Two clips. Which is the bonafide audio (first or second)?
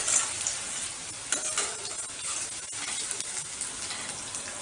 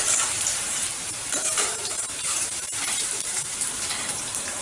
first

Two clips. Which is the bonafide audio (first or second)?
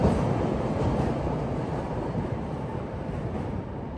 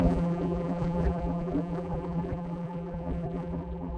first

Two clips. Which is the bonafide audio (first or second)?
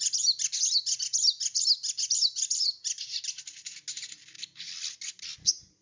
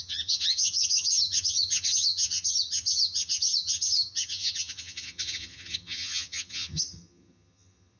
first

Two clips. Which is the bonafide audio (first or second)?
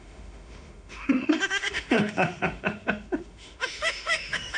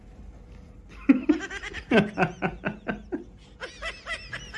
second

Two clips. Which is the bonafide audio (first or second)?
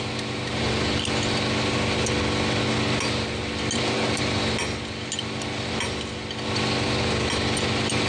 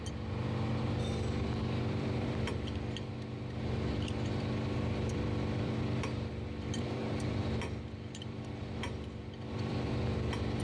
first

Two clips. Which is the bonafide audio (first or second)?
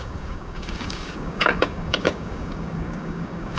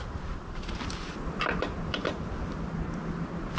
second